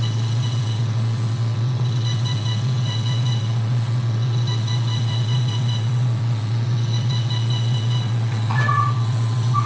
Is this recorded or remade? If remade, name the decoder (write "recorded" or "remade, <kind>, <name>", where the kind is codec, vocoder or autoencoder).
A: remade, vocoder, WaveNeXt